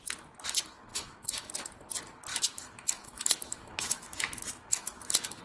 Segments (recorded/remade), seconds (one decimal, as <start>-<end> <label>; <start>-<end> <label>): 0.0-0.9 recorded; 0.9-1.5 remade; 1.5-2.3 recorded; 2.3-5.4 remade